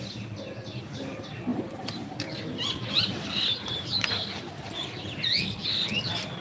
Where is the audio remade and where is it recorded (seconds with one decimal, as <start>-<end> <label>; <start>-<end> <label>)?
0.0-1.5 recorded; 1.5-5.3 remade; 5.3-6.4 recorded